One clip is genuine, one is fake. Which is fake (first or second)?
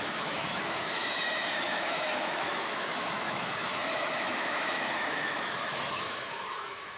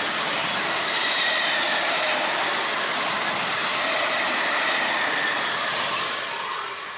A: first